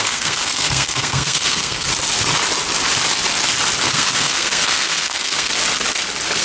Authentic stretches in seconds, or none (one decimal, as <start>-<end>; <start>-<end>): 1.9-3.8; 5.5-6.4